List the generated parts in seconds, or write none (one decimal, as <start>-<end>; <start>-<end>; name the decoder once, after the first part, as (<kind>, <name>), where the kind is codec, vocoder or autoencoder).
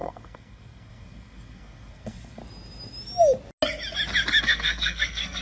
0.0-2.4 (codec, SNAC); 4.4-5.4